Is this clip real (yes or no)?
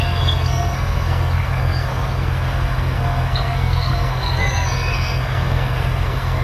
no